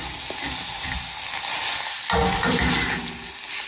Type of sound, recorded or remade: recorded